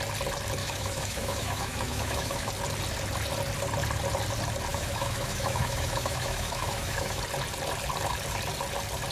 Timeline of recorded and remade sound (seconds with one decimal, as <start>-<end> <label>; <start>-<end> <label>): 0.0-0.6 recorded; 0.6-2.5 remade; 2.5-4.7 recorded; 4.7-7.2 remade; 7.2-9.1 recorded